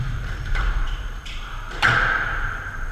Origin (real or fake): fake